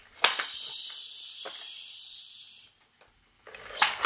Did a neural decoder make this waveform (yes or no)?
no